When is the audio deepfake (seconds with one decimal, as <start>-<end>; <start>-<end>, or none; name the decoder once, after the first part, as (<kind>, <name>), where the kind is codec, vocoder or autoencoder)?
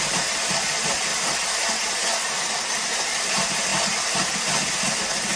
0.0-1.1 (vocoder, BigVGAN v2); 2.5-3.7; 4.7-5.4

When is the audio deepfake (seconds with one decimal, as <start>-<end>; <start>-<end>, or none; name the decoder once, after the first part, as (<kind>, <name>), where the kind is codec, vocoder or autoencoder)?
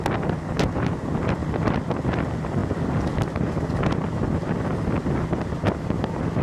1.4-2.0 (vocoder, BigVGAN v2)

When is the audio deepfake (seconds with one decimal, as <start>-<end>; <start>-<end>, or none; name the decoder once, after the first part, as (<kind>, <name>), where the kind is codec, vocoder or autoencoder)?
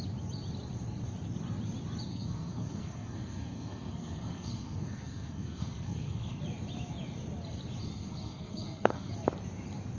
2.1-6.4 (codec, SNAC); 7.8-9.1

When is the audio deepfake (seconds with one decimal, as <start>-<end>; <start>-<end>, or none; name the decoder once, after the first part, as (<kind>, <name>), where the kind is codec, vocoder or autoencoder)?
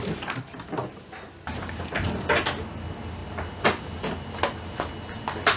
none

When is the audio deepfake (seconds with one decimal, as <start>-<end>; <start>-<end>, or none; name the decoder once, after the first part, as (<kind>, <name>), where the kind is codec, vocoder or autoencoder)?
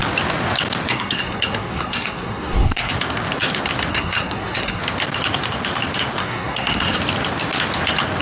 0.9-2.9 (codec, SNAC); 3.9-4.8; 6.2-7.0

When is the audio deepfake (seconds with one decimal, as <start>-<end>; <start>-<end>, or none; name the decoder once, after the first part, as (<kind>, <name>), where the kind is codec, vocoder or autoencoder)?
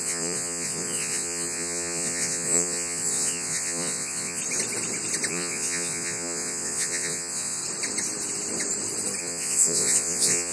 0.0-4.4 (vocoder, Vocos); 5.3-7.6; 9.2-10.5